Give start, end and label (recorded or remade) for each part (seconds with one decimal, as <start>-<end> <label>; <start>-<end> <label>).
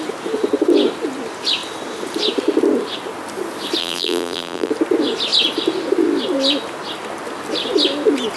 0.0-3.8 recorded; 3.8-4.7 remade; 4.7-8.4 recorded